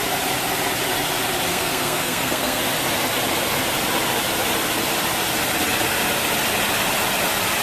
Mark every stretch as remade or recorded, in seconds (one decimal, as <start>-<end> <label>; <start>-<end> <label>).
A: 0.0-1.5 recorded; 1.5-2.6 remade; 2.6-7.6 recorded